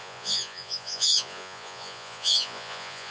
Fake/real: fake